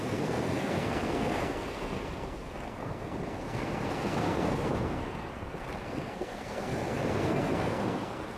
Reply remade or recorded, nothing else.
remade